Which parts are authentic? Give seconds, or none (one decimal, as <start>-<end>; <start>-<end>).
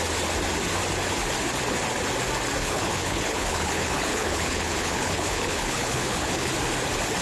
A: 0.0-2.6; 6.5-7.2